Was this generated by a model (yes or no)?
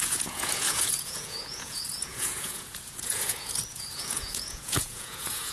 yes